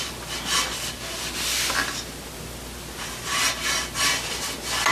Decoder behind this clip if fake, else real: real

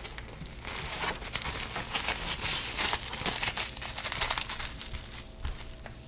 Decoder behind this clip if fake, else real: real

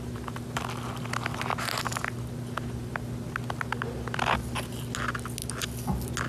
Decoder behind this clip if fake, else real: real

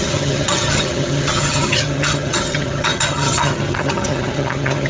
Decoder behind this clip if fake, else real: fake, vocoder, HiFi-GAN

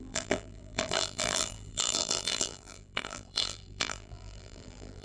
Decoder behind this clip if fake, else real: fake, vocoder, BigVGAN v2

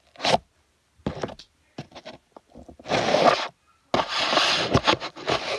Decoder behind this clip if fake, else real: real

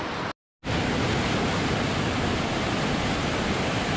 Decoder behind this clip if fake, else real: real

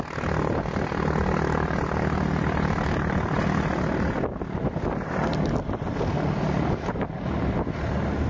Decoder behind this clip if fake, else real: real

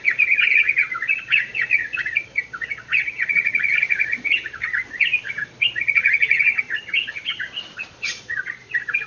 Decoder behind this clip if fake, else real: fake, vocoder, Vocos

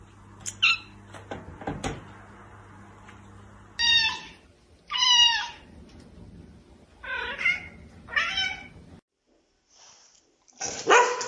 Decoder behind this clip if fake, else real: real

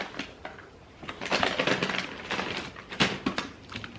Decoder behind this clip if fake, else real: real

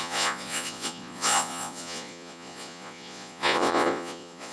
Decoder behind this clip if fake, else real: fake, vocoder, Vocos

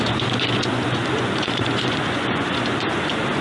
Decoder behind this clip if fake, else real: fake, vocoder, Vocos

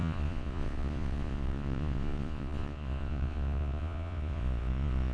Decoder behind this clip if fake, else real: fake, vocoder, Vocos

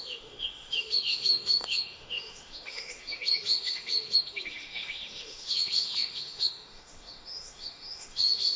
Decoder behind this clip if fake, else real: fake, autoencoder, DAC-VAE